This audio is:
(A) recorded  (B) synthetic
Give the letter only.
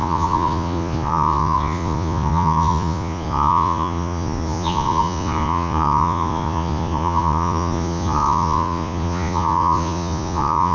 B